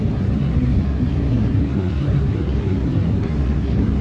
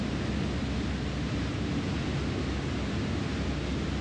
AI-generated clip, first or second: first